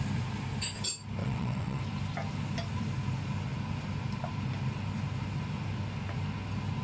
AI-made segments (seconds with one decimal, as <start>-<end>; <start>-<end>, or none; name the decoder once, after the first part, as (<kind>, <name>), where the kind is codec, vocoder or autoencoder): 1.2-1.8 (vocoder, WaveNeXt)